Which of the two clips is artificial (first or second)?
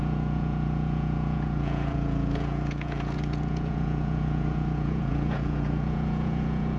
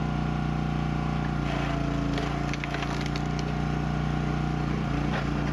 first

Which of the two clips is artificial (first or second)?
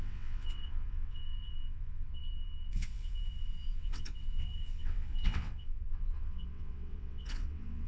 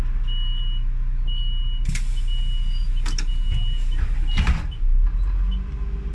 first